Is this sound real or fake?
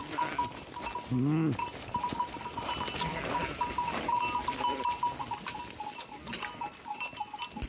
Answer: real